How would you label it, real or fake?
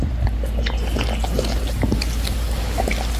real